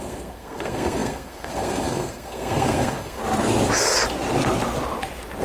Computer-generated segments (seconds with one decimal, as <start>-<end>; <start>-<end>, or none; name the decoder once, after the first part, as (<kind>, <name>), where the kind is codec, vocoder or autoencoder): 0.0-3.2 (codec, SNAC)